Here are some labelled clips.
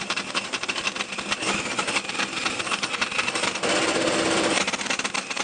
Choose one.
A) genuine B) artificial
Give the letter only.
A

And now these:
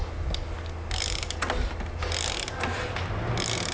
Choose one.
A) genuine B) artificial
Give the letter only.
A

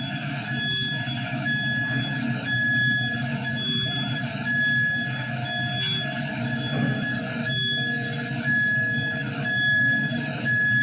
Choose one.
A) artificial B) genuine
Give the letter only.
A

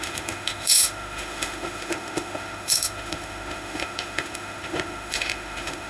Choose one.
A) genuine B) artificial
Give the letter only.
B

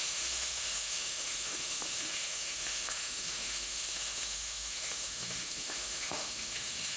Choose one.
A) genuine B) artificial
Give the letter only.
B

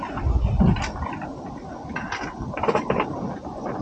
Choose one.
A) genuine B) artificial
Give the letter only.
A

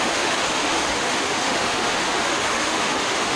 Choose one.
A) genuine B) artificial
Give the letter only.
B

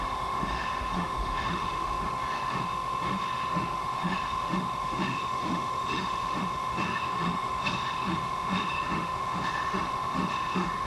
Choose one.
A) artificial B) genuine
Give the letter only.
A